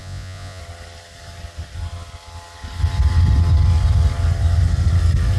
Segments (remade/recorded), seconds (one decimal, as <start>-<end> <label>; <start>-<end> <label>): 0.0-0.6 remade; 0.6-5.4 recorded